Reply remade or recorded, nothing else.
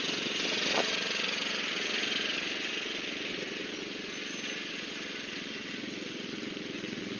remade